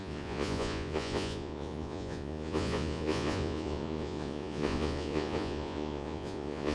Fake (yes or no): yes